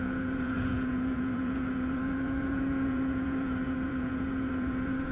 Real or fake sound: fake